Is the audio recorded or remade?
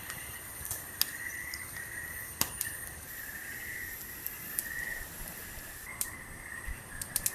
recorded